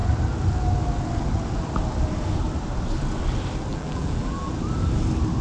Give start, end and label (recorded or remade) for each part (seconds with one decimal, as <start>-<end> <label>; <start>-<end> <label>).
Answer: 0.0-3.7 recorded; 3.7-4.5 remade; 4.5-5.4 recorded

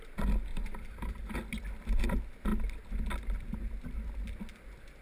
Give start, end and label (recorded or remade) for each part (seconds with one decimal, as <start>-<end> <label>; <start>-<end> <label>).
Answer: 0.0-0.5 recorded; 0.5-1.4 remade; 1.4-5.0 recorded

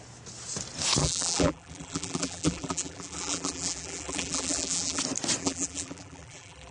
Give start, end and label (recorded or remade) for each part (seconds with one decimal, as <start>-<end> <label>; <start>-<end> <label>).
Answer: 0.0-1.0 recorded; 1.0-5.0 remade; 5.0-5.4 recorded; 5.4-6.7 remade

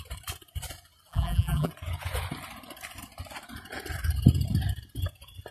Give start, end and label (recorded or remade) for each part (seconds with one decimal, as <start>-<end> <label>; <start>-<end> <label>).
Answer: 0.0-1.1 recorded; 1.1-1.7 remade; 1.7-5.5 recorded

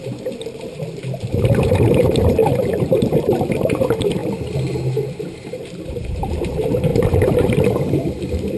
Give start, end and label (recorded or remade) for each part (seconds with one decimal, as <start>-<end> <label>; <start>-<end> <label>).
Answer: 0.0-1.2 recorded; 1.2-4.2 remade; 4.2-5.3 recorded; 5.3-8.6 remade